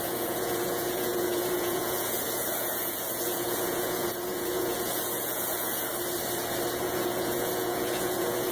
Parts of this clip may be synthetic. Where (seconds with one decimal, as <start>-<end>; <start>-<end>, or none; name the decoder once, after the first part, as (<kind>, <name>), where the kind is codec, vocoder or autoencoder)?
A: 0.0-5.9 (vocoder, Vocos); 6.8-8.5